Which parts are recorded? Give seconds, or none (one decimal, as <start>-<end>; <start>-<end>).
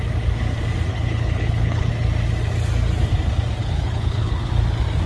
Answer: 0.0-0.9; 1.9-3.6; 4.5-5.1